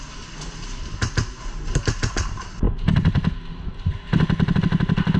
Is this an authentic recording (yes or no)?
yes